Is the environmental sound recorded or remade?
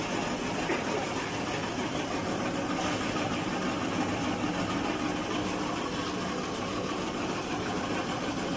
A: recorded